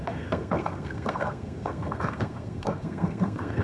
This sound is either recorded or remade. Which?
remade